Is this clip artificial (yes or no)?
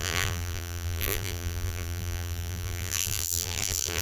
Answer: yes